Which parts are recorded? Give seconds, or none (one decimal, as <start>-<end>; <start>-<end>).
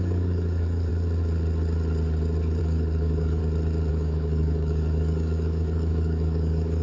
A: 0.9-2.6; 3.4-3.9